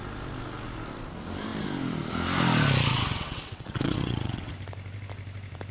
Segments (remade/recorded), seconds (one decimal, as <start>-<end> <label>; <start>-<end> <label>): 0.0-2.9 recorded; 2.9-4.5 remade; 4.5-5.7 recorded